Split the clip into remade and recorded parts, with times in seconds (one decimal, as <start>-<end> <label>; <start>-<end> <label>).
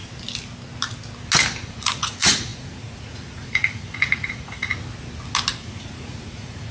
0.0-1.7 recorded; 1.7-4.7 remade; 4.7-5.6 recorded; 5.6-6.7 remade